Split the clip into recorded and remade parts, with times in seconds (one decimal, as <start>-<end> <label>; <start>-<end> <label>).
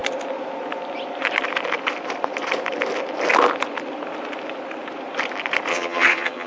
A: 0.0-5.7 recorded; 5.7-6.5 remade